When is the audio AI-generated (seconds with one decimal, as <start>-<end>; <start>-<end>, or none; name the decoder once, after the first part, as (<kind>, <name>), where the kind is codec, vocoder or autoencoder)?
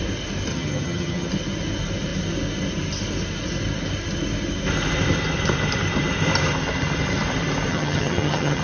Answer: 0.5-1.3 (vocoder, HiFi-GAN); 7.7-8.6